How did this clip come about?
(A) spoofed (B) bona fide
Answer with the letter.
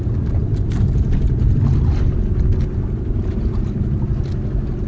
B